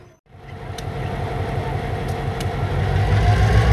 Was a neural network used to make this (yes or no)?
no